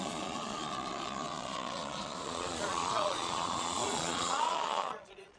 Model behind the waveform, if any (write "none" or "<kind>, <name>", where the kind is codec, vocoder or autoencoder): vocoder, Vocos